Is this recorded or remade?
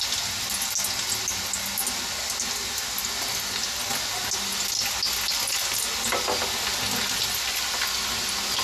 recorded